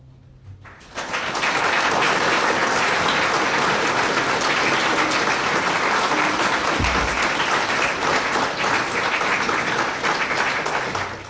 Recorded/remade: recorded